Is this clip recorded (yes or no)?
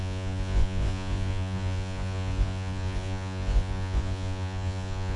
no